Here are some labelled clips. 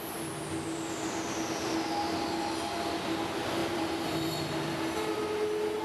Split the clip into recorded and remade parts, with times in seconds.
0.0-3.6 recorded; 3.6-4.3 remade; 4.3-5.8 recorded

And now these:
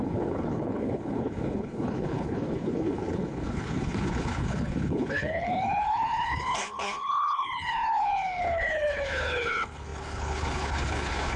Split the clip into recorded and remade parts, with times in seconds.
0.0-11.4 remade

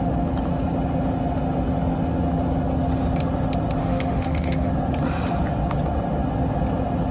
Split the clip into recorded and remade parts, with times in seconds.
0.0-3.8 recorded; 3.8-4.7 remade; 4.7-7.1 recorded

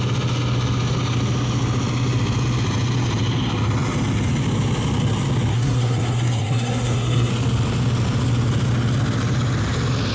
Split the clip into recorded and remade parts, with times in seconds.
0.0-5.5 recorded; 5.5-7.3 remade; 7.3-10.1 recorded

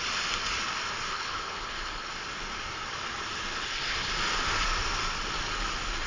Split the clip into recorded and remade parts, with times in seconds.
0.0-1.1 recorded; 1.1-2.1 remade; 2.1-3.5 recorded; 3.5-4.1 remade; 4.1-6.1 recorded

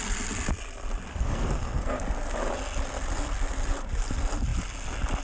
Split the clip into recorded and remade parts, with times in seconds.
0.0-1.1 recorded; 1.1-2.0 remade; 2.0-5.2 recorded

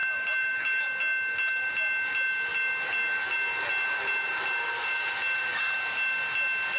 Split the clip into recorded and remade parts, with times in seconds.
0.0-0.8 remade; 0.8-6.8 recorded